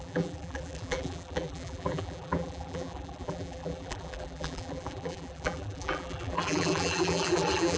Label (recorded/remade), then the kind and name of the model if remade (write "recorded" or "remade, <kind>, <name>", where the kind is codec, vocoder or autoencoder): remade, vocoder, BigVGAN v2